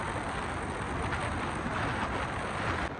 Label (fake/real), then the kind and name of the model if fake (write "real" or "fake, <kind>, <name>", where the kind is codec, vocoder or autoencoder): real